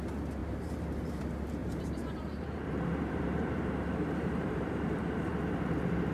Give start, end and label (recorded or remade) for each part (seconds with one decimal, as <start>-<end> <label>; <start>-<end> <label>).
0.0-0.4 recorded; 0.4-1.2 remade; 1.2-1.6 recorded; 1.6-5.3 remade; 5.3-6.1 recorded